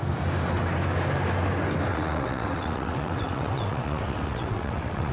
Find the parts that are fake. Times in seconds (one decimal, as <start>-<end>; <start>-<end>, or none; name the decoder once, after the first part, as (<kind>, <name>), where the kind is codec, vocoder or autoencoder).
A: 1.9-5.1 (vocoder, WaveNeXt)